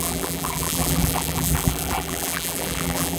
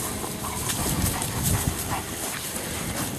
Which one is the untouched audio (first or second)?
second